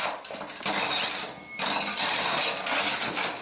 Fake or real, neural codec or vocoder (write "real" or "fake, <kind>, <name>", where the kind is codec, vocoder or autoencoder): real